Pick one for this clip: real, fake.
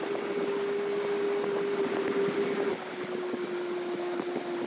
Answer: real